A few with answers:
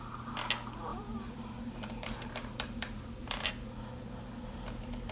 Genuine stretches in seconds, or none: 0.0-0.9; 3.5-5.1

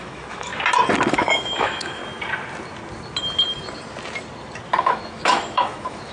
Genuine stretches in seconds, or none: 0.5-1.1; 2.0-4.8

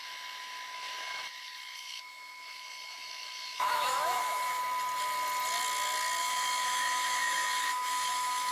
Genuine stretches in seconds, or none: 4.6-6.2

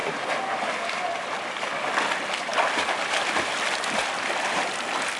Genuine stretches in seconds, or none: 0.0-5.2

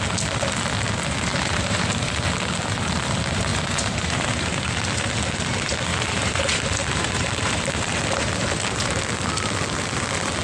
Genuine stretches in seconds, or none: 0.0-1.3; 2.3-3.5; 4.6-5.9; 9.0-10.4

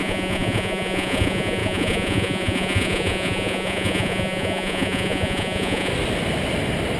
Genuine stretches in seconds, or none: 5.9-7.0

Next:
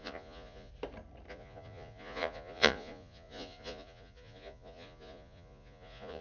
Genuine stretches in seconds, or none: 0.7-1.3